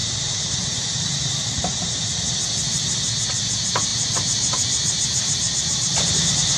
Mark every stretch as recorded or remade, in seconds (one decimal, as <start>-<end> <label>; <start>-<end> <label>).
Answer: 0.0-2.4 remade; 2.4-3.9 recorded; 3.9-6.1 remade; 6.1-6.6 recorded